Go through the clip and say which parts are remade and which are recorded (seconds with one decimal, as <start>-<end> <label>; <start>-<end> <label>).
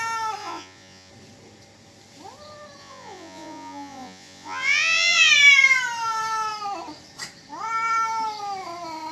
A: 0.0-0.4 recorded; 0.4-1.1 remade; 1.1-2.8 recorded; 2.8-5.3 remade; 5.3-9.1 recorded